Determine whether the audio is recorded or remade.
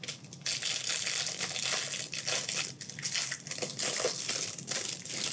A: recorded